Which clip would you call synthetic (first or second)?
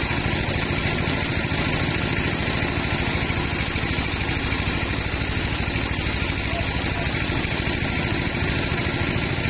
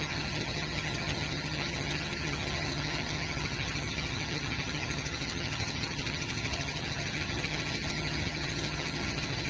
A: second